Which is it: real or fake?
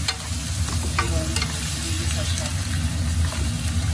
real